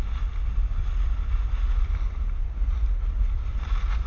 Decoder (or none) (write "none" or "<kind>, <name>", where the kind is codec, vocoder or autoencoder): none